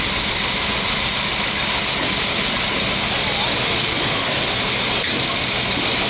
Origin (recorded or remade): recorded